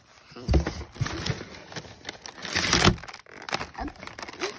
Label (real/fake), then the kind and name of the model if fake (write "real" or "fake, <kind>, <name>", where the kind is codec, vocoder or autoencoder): real